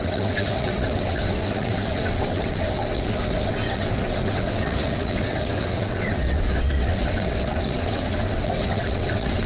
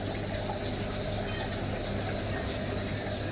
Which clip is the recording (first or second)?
second